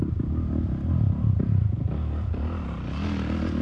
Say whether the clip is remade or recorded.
recorded